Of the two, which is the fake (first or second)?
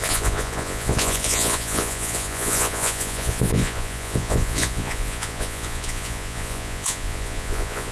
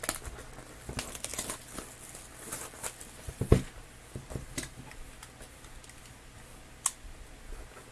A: first